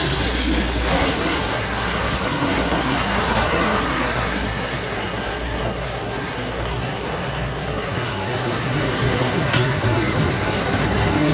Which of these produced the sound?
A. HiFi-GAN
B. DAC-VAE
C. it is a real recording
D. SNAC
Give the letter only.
D